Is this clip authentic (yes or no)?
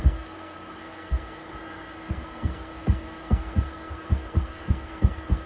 no